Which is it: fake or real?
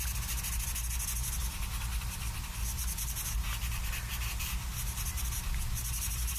real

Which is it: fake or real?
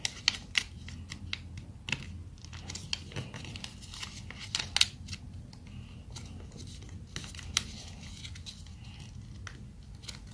real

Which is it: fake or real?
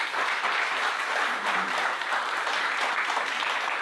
fake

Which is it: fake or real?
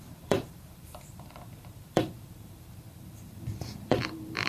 fake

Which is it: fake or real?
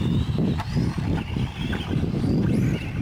real